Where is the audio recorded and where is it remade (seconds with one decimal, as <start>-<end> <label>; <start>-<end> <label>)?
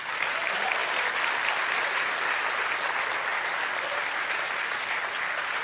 0.0-5.6 recorded